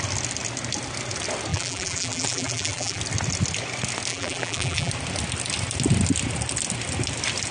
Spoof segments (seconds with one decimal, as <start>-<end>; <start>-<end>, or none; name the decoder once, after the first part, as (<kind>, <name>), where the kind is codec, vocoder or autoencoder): 1.5-3.0 (vocoder, BigVGAN v2); 4.1-4.9